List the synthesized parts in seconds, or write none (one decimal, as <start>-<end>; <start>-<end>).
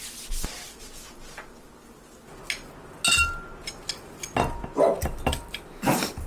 none